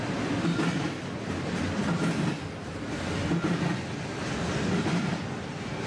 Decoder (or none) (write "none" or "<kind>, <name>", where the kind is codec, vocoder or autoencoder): none